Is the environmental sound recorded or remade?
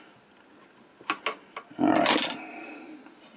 recorded